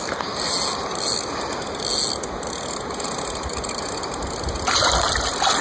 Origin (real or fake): real